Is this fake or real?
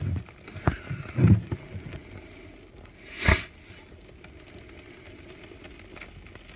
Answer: real